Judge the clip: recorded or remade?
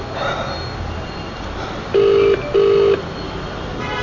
recorded